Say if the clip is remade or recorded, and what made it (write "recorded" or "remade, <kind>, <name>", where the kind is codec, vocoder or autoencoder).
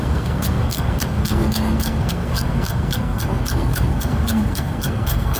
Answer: remade, codec, SNAC